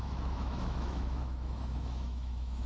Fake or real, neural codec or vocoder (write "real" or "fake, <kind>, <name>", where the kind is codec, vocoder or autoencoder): fake, autoencoder, DAC-VAE